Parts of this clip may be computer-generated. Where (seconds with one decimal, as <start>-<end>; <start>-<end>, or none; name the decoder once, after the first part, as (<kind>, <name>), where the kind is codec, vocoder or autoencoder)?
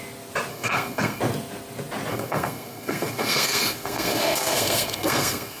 0.5-1.2 (codec, SNAC); 2.1-5.6